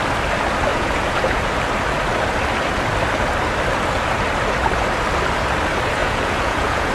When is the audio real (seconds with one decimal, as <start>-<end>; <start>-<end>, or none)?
0.0-0.7; 1.4-6.0